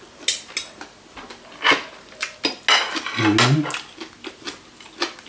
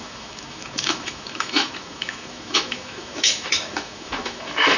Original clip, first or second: first